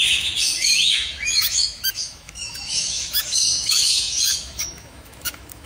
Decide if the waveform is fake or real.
fake